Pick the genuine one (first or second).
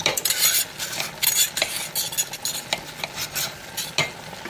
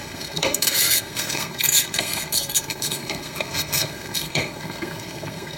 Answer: first